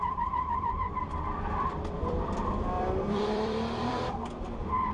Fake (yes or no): yes